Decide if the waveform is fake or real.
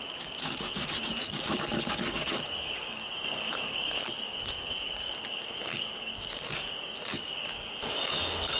fake